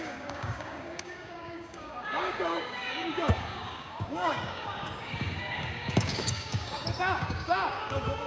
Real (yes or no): no